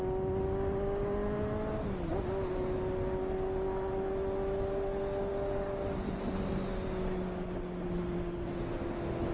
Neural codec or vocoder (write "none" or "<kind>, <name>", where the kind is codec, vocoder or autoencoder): none